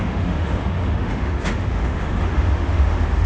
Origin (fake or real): fake